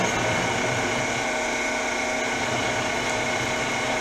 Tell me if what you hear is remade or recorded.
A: recorded